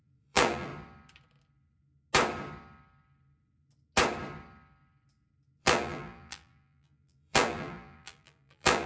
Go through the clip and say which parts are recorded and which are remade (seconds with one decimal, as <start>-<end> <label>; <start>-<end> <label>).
0.0-0.7 remade; 0.7-5.6 recorded; 5.6-8.9 remade